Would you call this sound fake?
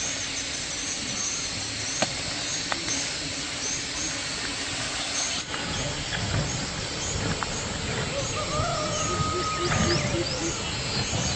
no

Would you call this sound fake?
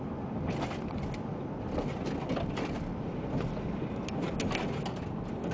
no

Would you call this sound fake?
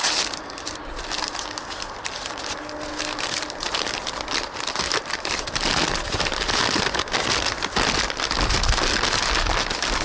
no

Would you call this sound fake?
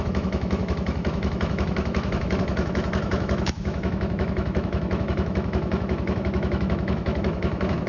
yes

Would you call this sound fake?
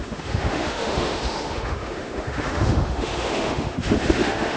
yes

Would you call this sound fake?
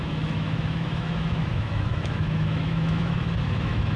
yes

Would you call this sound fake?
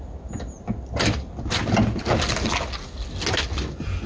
no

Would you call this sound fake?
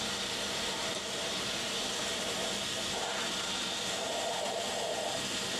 no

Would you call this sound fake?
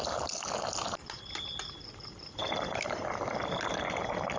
no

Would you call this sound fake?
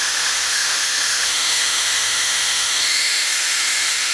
yes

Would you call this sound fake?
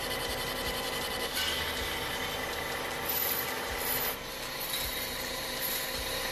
no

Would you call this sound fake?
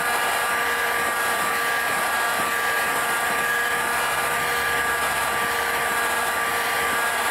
no